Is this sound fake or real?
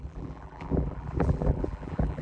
fake